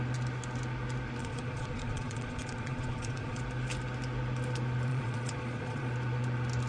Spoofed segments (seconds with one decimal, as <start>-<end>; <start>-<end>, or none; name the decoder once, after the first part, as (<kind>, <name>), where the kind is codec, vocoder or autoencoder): 1.2-3.4 (vocoder, Vocos); 4.9-5.9